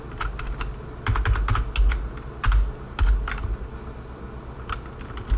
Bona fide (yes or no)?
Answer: yes